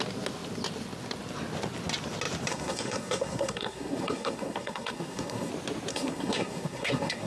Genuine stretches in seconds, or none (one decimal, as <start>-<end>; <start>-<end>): 0.0-2.5; 5.5-5.9